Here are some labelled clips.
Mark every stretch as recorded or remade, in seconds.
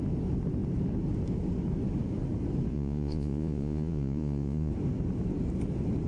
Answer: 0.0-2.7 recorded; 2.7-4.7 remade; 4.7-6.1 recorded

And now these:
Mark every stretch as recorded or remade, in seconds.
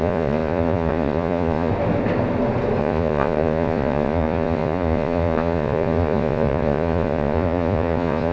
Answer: 0.0-1.7 remade; 1.7-2.8 recorded; 2.8-8.3 remade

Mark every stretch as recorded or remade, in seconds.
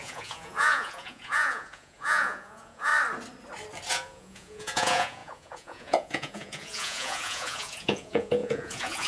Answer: 0.0-2.9 remade; 2.9-3.9 recorded; 3.9-9.1 remade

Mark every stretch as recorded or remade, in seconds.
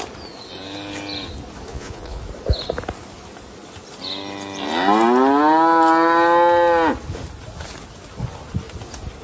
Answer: 0.0-1.7 recorded; 1.7-2.2 remade; 2.2-9.2 recorded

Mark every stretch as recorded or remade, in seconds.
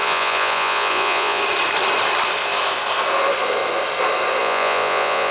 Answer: 0.0-1.4 remade; 1.4-4.4 recorded; 4.4-5.3 remade